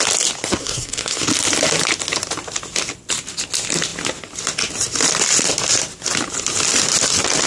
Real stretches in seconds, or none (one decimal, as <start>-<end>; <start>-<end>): 0.0-0.6; 1.3-7.5